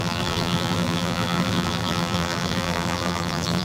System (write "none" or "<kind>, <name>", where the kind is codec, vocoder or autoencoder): vocoder, BigVGAN v2